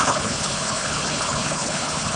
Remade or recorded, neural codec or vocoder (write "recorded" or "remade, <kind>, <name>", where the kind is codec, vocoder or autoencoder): remade, codec, HILCodec